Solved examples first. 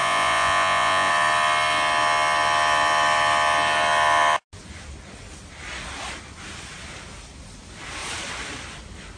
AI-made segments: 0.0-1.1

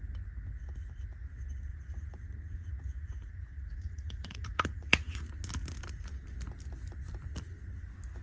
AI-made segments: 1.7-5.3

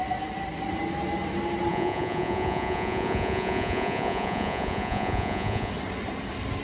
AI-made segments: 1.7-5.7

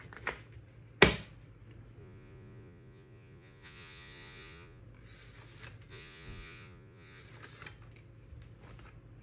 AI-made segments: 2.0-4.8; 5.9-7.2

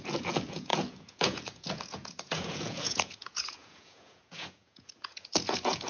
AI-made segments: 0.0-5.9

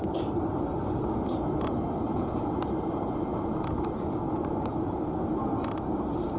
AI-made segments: none

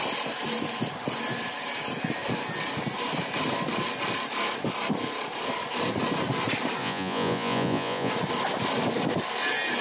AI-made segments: 6.8-8.1